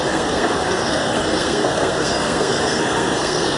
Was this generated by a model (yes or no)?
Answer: yes